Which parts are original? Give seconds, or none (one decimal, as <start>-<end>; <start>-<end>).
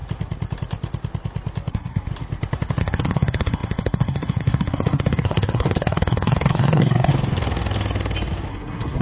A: 0.0-1.7; 2.1-2.8; 7.1-8.5